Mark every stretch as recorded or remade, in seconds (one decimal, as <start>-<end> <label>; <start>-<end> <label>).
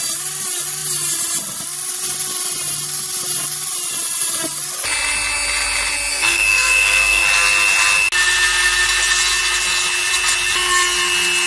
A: 0.0-6.1 recorded; 6.1-7.2 remade; 7.2-11.5 recorded